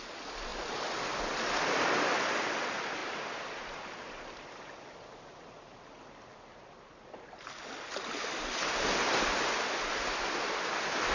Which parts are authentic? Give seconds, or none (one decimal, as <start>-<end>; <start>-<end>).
0.0-11.1